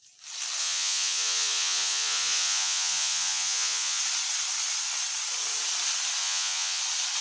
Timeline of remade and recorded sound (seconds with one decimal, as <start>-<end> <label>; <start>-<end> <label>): 0.0-0.6 recorded; 0.6-4.0 remade; 4.0-6.2 recorded; 6.2-6.8 remade; 6.8-7.2 recorded